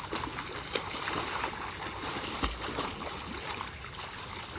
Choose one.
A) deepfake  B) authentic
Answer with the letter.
B